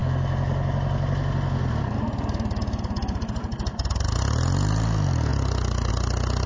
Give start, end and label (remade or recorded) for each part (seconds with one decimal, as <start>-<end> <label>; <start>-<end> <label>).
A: 0.0-6.5 recorded

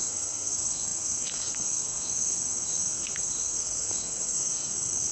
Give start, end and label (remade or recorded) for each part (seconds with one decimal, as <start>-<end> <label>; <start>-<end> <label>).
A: 0.0-5.1 remade

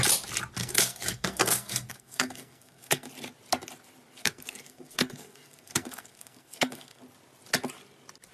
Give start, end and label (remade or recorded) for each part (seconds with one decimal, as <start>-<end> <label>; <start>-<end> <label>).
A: 0.0-0.6 recorded; 0.6-3.1 remade; 3.1-4.2 recorded; 4.2-7.0 remade; 7.0-8.3 recorded

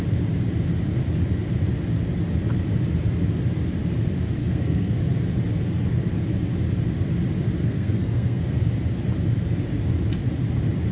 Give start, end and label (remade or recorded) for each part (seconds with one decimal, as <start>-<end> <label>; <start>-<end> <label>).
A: 0.0-4.4 recorded; 4.4-5.0 remade; 5.0-7.6 recorded; 7.6-8.6 remade; 8.6-10.9 recorded

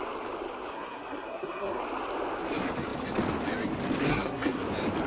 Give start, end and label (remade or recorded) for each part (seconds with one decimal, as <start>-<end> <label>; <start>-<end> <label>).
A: 0.0-0.7 recorded; 0.7-1.8 remade; 1.8-4.1 recorded; 4.1-4.6 remade; 4.6-5.1 recorded

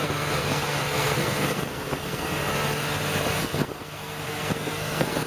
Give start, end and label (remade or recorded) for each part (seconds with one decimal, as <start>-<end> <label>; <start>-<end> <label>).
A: 0.0-2.5 remade; 2.5-3.3 recorded; 3.3-5.3 remade

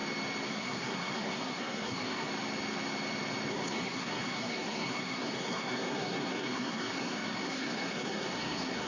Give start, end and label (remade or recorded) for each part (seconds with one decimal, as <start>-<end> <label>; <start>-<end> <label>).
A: 0.0-0.5 recorded; 0.5-2.3 remade; 2.3-3.5 recorded; 3.5-8.9 remade

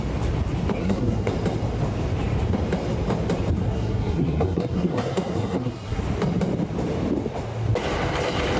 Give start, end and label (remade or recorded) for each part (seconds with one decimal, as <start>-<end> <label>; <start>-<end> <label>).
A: 0.0-0.8 recorded; 0.8-1.3 remade; 1.3-3.6 recorded; 3.6-6.0 remade; 6.0-8.6 recorded